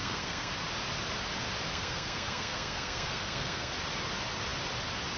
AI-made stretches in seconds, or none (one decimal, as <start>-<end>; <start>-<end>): 0.0-0.5; 1.7-3.7